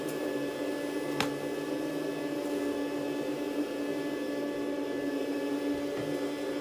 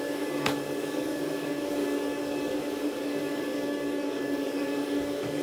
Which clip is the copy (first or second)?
second